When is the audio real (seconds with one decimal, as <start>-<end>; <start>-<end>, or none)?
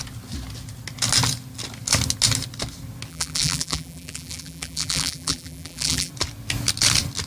0.0-3.1; 6.1-7.3